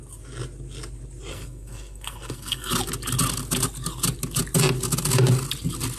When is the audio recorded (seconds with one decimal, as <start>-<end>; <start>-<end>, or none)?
0.0-1.3; 2.7-6.0